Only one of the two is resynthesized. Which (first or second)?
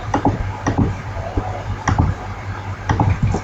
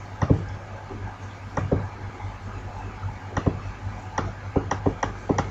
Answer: first